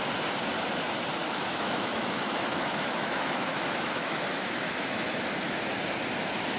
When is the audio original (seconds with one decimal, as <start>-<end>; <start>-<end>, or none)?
0.0-1.2; 5.2-6.6